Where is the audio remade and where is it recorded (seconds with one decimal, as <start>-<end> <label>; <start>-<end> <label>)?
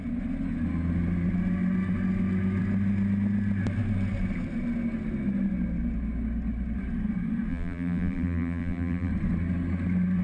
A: 0.0-7.5 recorded; 7.5-9.1 remade; 9.1-10.2 recorded